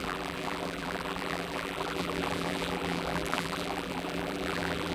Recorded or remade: remade